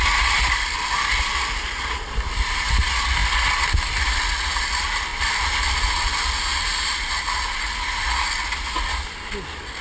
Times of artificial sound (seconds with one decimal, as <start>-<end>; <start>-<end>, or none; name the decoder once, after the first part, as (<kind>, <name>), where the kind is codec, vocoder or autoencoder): none